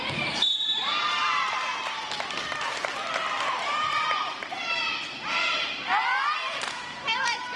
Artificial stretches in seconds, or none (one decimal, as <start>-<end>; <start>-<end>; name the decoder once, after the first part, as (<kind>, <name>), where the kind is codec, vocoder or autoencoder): 0.0-7.6 (vocoder, BigVGAN v2)